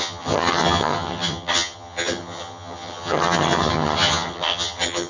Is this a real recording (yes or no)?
no